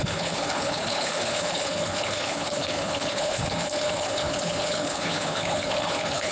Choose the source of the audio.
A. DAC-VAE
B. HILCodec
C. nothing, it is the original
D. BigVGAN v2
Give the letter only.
B